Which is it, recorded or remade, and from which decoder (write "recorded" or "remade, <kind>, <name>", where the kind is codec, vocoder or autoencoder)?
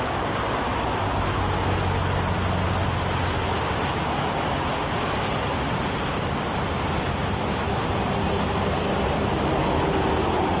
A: recorded